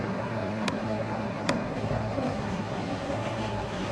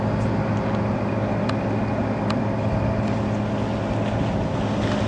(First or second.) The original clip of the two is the second